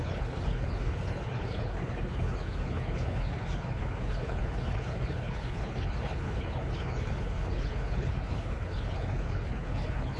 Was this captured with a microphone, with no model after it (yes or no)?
no